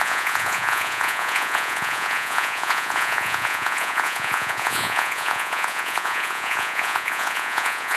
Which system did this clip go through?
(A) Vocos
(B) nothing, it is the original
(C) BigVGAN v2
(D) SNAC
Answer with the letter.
A